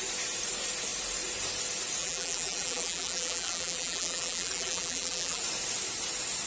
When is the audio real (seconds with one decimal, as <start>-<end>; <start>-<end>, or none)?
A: 0.0-2.0; 5.4-6.5